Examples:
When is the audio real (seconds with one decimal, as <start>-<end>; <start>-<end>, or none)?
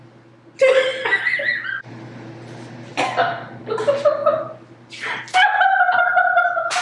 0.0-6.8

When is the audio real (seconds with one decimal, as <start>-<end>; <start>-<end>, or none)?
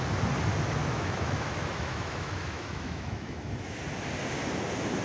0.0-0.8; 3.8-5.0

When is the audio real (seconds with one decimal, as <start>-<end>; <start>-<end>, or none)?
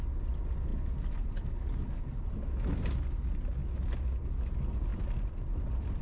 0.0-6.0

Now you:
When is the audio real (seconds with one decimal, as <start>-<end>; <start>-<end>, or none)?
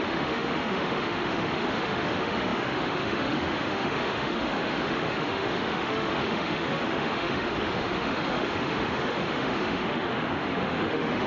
none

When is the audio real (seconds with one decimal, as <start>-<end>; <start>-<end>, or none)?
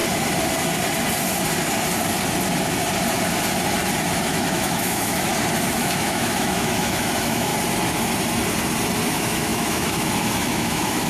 0.0-4.2; 5.3-5.8; 7.5-9.1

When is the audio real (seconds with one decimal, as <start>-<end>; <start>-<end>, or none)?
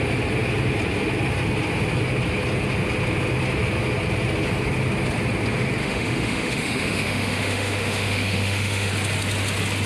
0.0-5.8; 8.9-9.9